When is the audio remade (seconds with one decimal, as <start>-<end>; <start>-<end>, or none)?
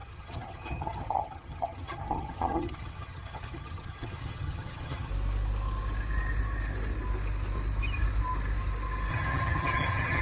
0.0-5.1; 9.1-10.2